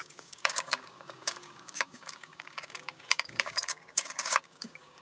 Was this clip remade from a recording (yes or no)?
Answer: yes